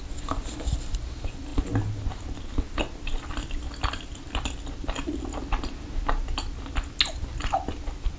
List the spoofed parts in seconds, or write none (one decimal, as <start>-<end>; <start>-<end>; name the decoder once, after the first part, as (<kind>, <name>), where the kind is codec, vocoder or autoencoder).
none